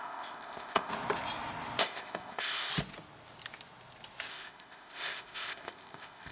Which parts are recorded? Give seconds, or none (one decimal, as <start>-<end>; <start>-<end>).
0.9-1.8; 2.7-4.3